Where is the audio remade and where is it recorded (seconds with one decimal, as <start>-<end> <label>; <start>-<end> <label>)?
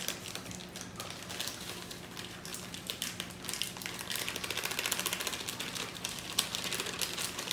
0.0-7.5 recorded